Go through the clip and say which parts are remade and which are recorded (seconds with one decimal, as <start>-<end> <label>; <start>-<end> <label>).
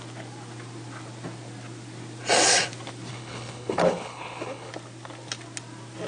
0.0-3.1 recorded; 3.1-4.7 remade; 4.7-6.1 recorded